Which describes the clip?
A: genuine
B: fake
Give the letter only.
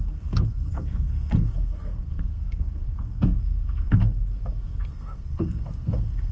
B